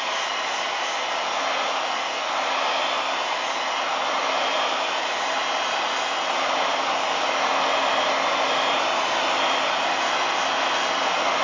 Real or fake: real